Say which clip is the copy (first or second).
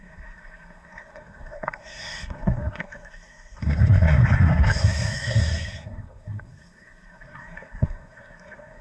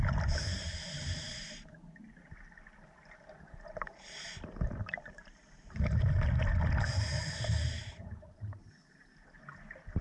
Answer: first